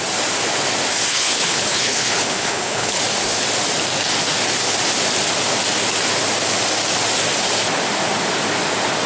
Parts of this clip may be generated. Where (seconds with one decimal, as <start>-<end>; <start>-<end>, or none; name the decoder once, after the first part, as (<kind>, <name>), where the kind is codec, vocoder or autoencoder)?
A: 1.1-3.0 (codec, HILCodec)